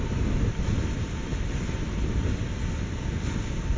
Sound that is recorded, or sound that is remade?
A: recorded